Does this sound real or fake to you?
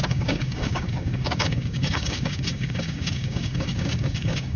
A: fake